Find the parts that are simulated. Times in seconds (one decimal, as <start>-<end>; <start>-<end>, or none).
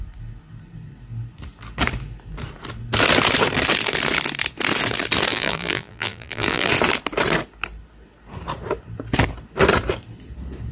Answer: 5.3-6.7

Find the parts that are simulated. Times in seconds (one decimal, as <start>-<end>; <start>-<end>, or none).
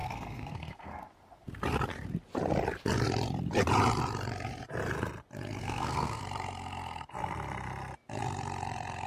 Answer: 0.0-1.0; 5.6-6.2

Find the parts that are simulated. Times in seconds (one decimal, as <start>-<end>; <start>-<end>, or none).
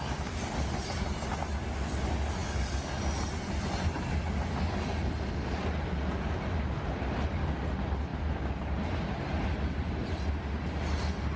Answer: none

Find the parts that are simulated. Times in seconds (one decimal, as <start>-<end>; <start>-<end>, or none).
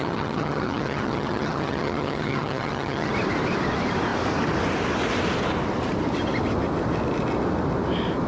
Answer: 0.0-3.1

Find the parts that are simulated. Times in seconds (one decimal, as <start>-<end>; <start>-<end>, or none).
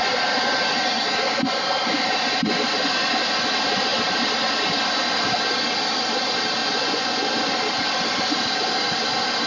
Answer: 6.6-7.3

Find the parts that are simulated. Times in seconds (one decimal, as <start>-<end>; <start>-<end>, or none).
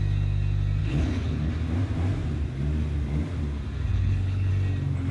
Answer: 0.8-1.5; 3.9-4.5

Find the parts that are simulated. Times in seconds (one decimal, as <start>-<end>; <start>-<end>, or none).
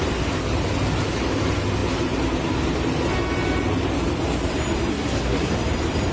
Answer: 4.9-5.5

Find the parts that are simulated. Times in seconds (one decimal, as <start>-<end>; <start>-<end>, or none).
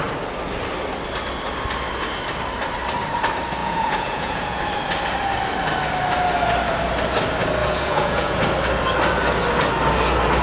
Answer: 3.6-4.6; 7.6-8.4